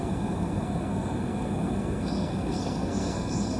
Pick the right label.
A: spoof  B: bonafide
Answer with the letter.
A